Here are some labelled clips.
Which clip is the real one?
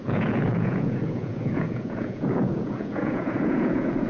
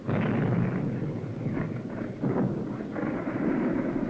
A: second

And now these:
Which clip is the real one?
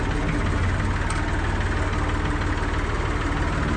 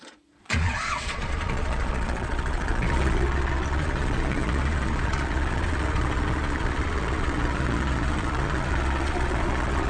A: first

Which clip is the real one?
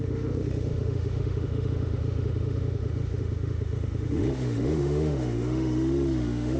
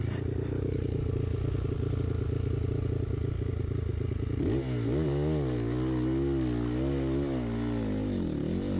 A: second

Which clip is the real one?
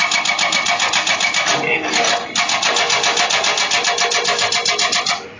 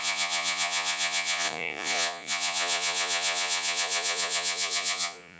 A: first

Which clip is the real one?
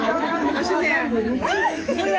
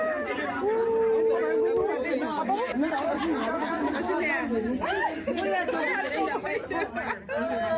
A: second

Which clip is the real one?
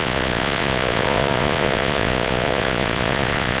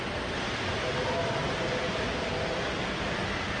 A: second